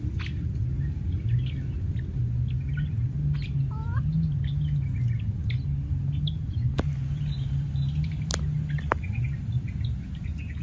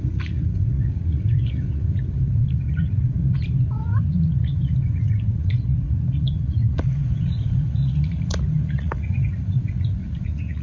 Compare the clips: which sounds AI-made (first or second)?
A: second